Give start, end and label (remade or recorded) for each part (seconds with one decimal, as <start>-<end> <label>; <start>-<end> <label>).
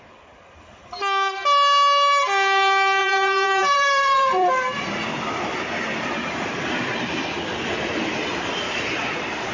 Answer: 0.0-3.0 recorded; 3.0-4.5 remade; 4.5-9.5 recorded